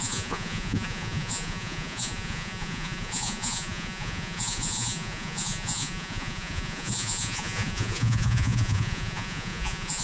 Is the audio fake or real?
fake